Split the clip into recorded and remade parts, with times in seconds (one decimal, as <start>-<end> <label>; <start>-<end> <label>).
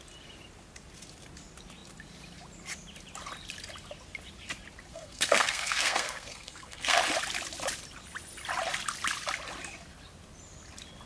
0.0-4.9 recorded; 4.9-7.0 remade; 7.0-11.1 recorded